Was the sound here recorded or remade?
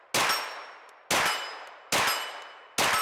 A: recorded